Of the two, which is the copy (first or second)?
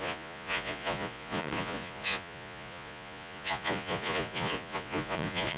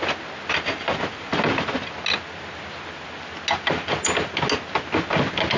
first